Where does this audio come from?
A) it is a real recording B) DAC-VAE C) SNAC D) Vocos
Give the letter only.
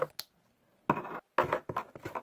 A